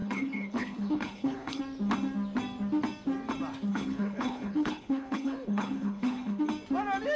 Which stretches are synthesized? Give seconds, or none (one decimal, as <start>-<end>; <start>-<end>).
0.0-1.6; 3.7-6.4